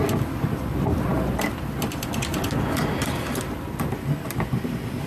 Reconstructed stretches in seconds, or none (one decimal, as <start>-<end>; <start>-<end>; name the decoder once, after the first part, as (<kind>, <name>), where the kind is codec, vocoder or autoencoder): 1.1-2.4 (vocoder, BigVGAN v2)

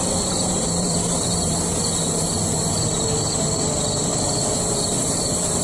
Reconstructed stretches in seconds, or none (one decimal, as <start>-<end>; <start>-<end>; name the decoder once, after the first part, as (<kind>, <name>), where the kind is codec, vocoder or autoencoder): 0.0-1.7 (vocoder, BigVGAN v2); 5.1-5.6